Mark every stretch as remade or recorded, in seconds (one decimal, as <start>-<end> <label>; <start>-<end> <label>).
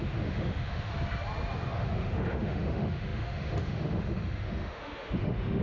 0.0-0.9 remade; 0.9-1.7 recorded; 1.7-5.6 remade